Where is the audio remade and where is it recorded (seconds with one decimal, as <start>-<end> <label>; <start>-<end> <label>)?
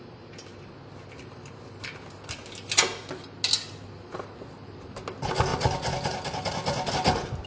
0.0-7.5 recorded